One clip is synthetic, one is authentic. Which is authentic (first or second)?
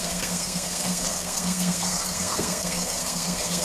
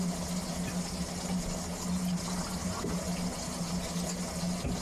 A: second